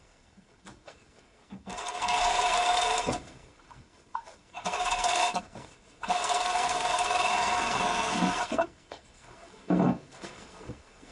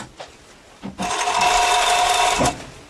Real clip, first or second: second